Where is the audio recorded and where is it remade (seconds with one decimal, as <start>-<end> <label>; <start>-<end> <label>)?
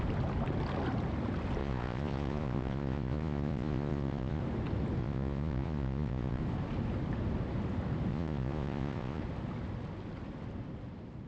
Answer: 0.0-1.6 recorded; 1.6-4.4 remade; 4.4-5.0 recorded; 5.0-6.4 remade; 6.4-8.1 recorded; 8.1-9.2 remade; 9.2-11.3 recorded